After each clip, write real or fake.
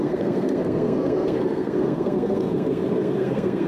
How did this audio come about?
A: fake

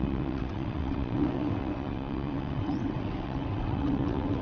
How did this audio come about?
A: fake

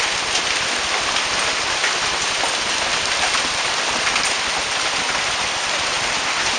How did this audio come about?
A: real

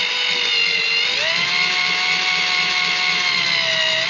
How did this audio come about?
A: real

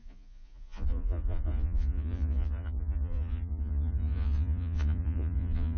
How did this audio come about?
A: fake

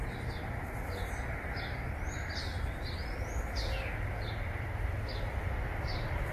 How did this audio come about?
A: real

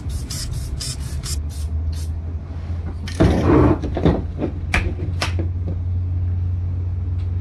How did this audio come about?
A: real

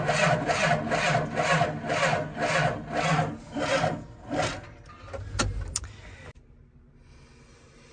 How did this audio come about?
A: real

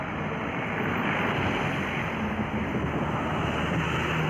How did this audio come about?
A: real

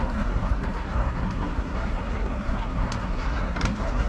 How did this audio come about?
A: fake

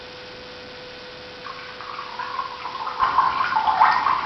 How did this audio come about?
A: real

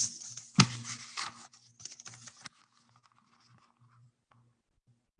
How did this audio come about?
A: real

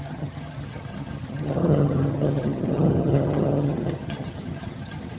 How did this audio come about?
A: fake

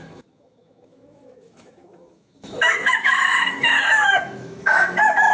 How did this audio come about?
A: fake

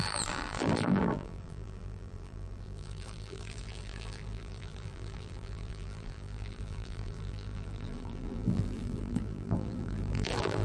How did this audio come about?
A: fake